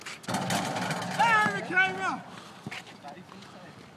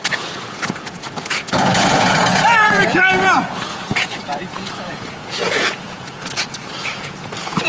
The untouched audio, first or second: first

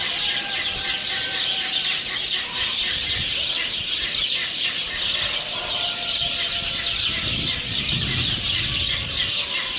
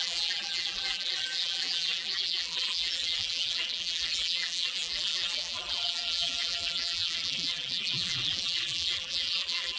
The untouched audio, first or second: first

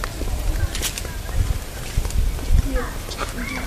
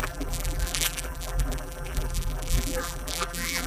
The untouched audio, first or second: first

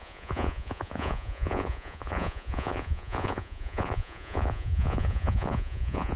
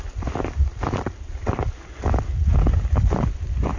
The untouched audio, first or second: second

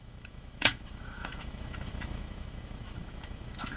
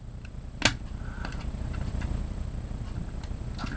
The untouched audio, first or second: second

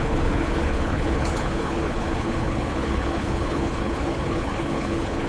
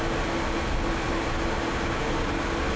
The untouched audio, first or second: second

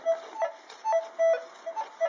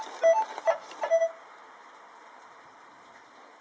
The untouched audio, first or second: first